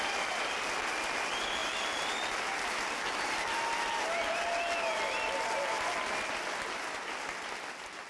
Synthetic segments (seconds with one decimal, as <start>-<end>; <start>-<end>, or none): none